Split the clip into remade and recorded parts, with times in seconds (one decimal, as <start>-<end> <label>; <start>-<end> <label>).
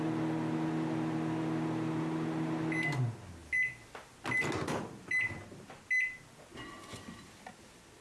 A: 0.0-8.0 recorded